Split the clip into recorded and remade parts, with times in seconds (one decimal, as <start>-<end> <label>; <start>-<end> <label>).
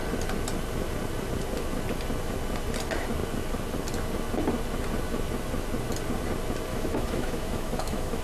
0.0-6.7 recorded; 6.7-8.2 remade